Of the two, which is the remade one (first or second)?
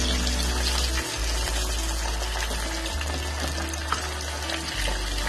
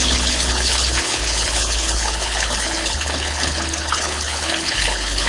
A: second